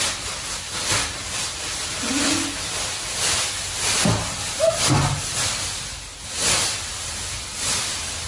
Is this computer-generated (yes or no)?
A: no